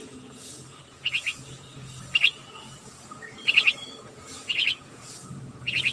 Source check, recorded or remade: remade